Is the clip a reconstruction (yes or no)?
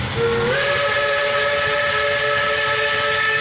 no